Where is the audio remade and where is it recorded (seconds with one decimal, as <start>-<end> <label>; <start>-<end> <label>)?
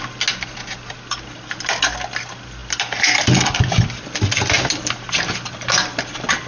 0.0-6.5 recorded